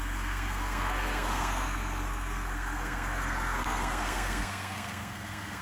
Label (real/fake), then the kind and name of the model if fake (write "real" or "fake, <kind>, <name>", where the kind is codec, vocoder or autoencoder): fake, codec, SNAC